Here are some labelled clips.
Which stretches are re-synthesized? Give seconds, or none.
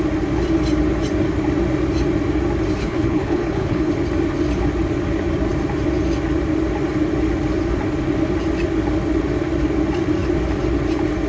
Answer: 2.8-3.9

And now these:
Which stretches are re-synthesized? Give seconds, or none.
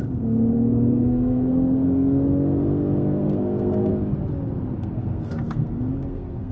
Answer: 0.0-3.9; 4.8-6.5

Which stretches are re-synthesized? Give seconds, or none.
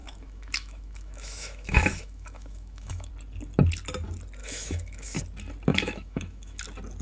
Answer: 0.0-3.1; 4.4-5.2; 5.7-6.6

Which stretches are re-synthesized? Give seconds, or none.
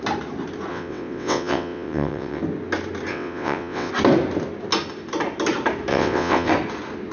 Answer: 0.7-2.4; 3.1-3.9; 5.9-6.5